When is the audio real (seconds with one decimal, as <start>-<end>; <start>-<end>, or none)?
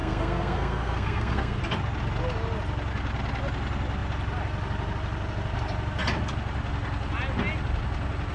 1.6-8.3